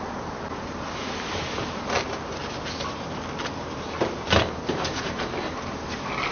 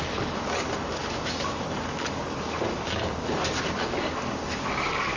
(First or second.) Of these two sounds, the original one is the first